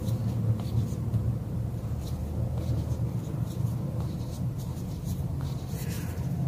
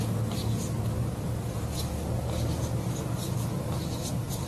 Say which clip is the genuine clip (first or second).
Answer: second